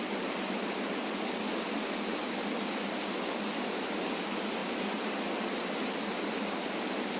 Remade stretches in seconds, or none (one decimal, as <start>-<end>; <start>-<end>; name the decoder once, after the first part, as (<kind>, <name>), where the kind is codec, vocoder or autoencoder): 4.6-5.1 (vocoder, BigVGAN v2)